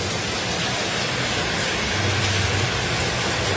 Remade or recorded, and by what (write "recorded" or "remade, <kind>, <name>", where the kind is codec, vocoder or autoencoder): recorded